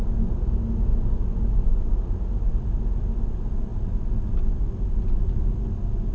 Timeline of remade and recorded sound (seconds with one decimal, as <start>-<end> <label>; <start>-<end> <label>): 0.0-6.1 recorded